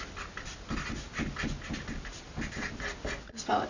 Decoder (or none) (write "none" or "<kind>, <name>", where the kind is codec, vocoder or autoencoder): none